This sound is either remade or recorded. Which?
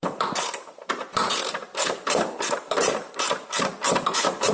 remade